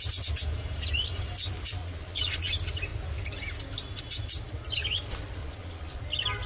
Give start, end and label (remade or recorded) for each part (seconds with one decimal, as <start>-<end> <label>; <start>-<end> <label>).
0.0-1.8 recorded; 1.8-2.5 remade; 2.5-5.4 recorded; 5.4-6.0 remade; 6.0-6.5 recorded